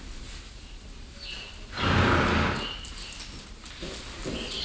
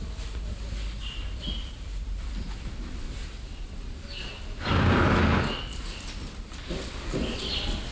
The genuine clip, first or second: first